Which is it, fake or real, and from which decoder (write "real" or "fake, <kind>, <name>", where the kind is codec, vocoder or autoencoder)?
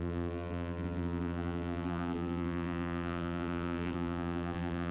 fake, vocoder, BigVGAN v2